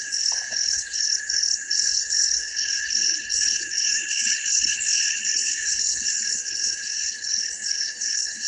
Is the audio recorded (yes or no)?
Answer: no